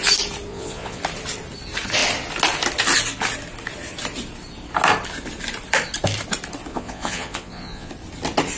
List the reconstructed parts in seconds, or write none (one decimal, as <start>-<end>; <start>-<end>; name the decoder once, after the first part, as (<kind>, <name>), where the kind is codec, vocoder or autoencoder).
0.5-1.0 (vocoder, Vocos); 6.7-7.9